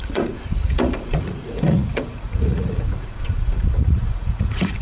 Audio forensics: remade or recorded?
remade